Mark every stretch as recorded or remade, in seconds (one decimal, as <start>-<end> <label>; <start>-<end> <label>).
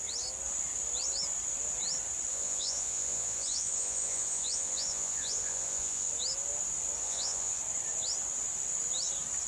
0.0-2.3 recorded; 2.3-6.1 remade; 6.1-7.0 recorded; 7.0-7.6 remade; 7.6-9.5 recorded